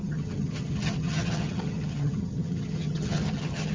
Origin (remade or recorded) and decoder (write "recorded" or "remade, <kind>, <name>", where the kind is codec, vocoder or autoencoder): remade, vocoder, HiFi-GAN